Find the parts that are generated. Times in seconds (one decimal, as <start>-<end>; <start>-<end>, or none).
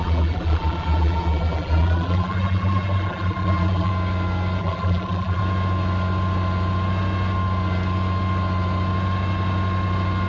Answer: 0.0-3.9; 4.6-5.4